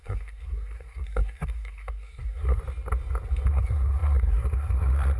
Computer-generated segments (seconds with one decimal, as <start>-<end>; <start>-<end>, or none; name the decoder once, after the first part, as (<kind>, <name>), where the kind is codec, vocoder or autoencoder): 0.0-2.6 (codec, SNAC); 3.5-5.2